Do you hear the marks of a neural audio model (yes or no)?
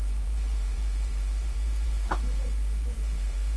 yes